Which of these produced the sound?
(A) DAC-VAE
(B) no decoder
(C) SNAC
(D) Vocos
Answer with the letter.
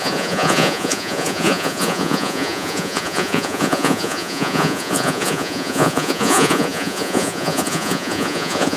D